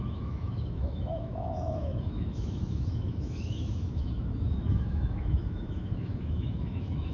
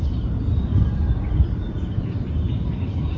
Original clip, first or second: second